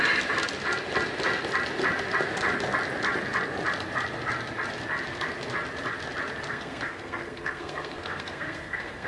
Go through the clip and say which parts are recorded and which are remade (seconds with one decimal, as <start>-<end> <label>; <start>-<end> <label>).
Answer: 0.0-6.5 recorded; 6.5-9.1 remade